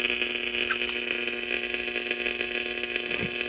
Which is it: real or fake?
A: real